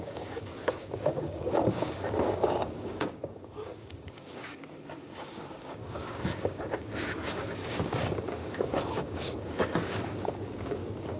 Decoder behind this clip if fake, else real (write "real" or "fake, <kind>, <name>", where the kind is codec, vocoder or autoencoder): fake, codec, DAC